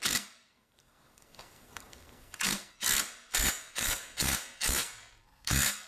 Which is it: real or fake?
fake